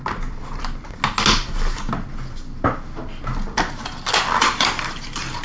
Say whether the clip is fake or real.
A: real